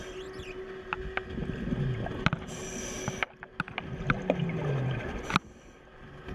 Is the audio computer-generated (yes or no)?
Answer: no